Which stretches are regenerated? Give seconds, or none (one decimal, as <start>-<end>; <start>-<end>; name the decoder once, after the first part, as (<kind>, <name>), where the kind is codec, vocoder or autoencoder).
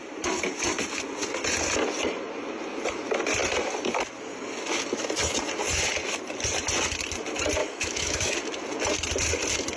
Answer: 7.6-8.3 (autoencoder, DAC-VAE)